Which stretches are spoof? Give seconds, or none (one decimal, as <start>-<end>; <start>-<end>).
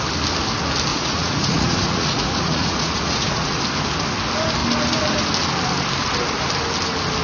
0.9-3.6